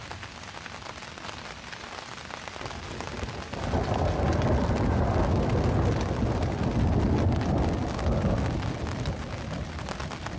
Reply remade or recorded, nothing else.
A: recorded